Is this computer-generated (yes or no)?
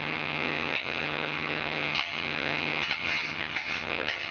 yes